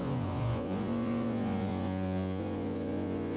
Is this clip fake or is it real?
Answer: fake